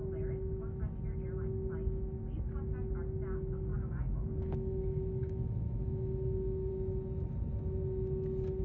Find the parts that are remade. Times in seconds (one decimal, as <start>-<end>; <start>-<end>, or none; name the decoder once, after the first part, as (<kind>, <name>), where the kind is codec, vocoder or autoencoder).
3.7-6.7 (autoencoder, DAC-VAE)